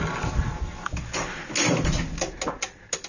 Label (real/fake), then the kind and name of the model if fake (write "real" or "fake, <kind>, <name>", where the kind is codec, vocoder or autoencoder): real